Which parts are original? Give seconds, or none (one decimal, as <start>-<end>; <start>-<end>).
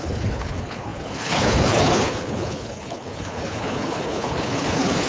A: none